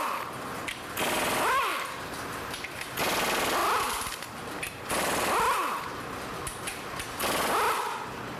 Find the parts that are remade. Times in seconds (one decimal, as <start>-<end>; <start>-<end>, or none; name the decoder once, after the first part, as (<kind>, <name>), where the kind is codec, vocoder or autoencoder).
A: 1.7-2.7 (vocoder, BigVGAN v2); 3.6-4.9

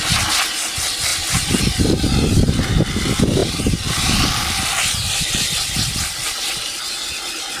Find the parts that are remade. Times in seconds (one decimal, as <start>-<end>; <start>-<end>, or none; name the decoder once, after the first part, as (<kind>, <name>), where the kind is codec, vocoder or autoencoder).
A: 1.1-1.6 (vocoder, BigVGAN v2); 3.4-6.8

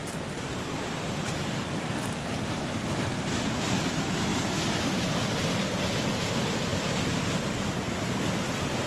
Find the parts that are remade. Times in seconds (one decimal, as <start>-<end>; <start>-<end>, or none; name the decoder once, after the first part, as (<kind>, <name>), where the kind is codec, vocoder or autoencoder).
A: 0.0-3.7 (vocoder, BigVGAN v2); 4.3-4.8

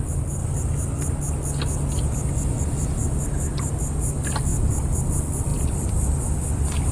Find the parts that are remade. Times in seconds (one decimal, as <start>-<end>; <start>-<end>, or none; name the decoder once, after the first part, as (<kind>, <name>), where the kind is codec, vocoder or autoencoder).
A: 4.5-5.1 (vocoder, BigVGAN v2); 5.5-6.9